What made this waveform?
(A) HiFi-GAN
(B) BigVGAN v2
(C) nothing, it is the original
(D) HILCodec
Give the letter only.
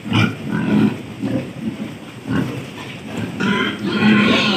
C